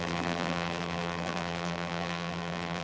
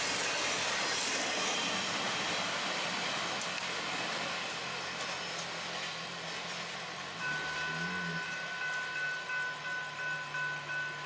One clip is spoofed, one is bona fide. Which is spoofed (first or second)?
first